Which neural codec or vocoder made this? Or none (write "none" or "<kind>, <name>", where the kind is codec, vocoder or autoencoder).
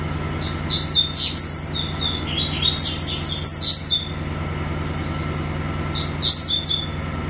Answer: none